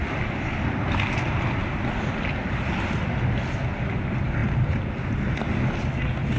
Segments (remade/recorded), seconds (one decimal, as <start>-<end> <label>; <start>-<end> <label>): 0.0-6.4 recorded